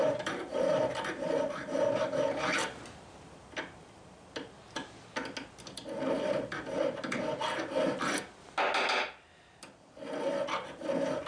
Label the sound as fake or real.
real